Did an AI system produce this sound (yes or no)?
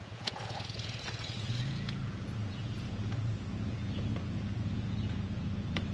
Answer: yes